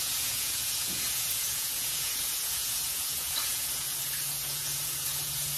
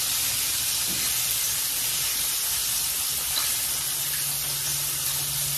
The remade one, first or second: first